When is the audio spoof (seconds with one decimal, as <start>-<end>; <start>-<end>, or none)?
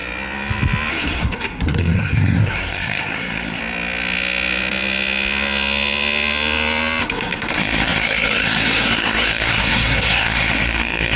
0.9-3.6; 7.0-11.2